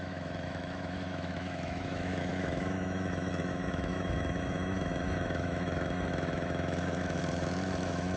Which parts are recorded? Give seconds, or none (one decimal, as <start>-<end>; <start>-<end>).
none